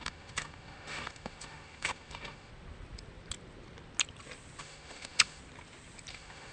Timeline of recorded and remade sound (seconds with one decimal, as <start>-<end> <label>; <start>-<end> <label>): 0.0-2.5 remade; 2.5-4.6 recorded; 4.6-5.4 remade; 5.4-6.1 recorded; 6.1-6.5 remade